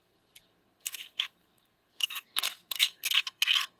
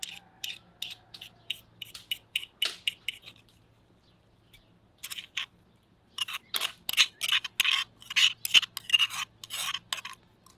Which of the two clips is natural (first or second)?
second